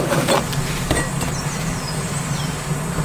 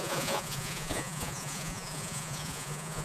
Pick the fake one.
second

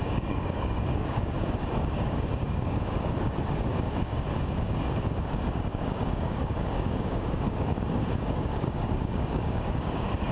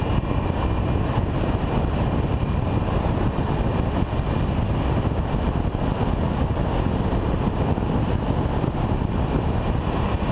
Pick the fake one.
first